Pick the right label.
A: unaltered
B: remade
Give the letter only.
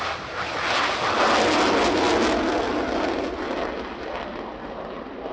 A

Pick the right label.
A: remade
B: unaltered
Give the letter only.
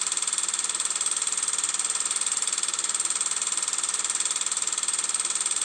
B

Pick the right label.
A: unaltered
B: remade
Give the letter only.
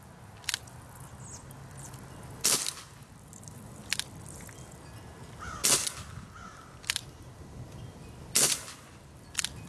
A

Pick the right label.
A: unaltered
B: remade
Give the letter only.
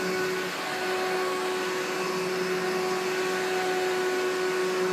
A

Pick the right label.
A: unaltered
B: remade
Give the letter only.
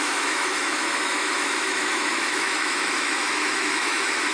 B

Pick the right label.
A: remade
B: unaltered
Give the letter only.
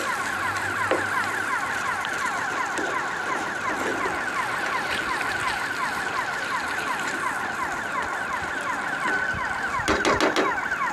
B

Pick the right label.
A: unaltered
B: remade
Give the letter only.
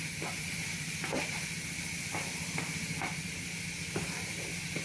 A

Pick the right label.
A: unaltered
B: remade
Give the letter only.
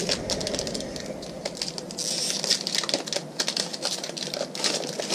A